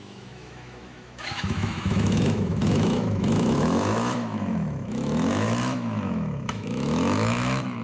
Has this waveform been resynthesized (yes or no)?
yes